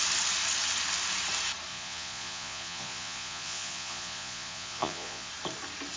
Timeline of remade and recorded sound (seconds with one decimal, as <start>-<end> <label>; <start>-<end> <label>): 0.0-1.7 recorded; 1.7-5.3 remade; 5.3-6.0 recorded